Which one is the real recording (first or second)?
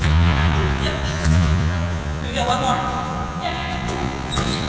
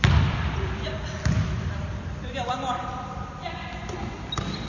second